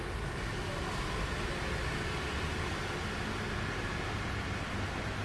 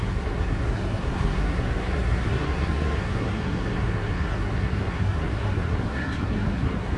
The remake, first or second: second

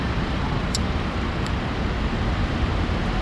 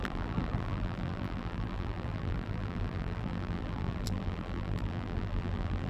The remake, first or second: second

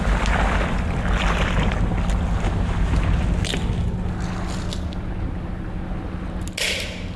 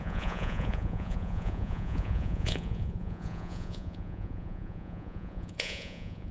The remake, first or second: second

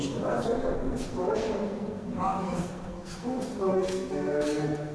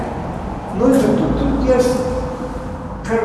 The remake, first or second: first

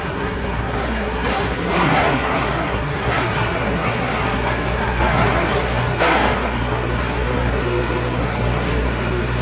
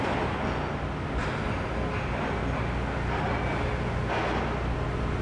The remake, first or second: first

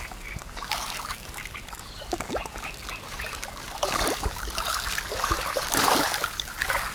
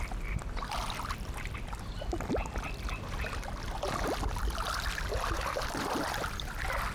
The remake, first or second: first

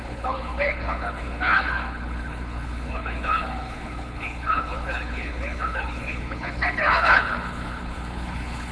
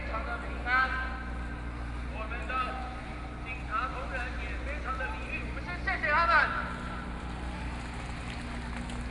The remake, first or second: first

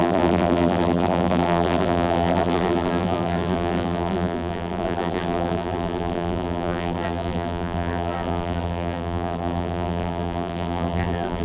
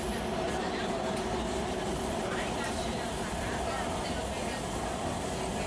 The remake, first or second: first